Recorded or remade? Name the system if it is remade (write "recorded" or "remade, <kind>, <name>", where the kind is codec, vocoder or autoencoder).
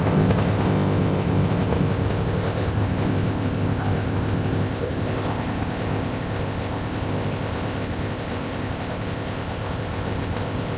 remade, codec, ZipCodec